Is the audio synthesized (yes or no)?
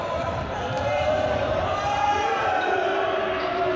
no